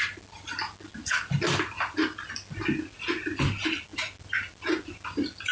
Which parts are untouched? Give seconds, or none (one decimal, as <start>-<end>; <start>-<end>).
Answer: 0.0-5.5